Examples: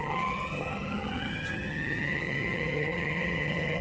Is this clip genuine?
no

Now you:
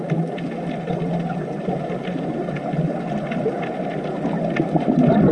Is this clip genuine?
yes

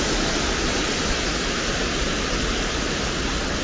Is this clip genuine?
yes